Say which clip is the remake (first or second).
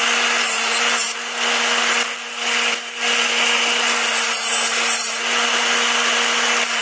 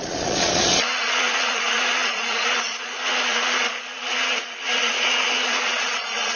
second